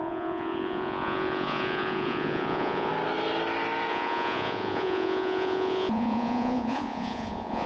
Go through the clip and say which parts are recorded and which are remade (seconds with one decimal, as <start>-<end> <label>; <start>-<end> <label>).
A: 0.0-2.9 remade; 2.9-3.9 recorded; 3.9-7.7 remade